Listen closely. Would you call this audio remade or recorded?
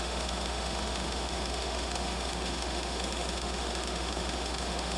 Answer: remade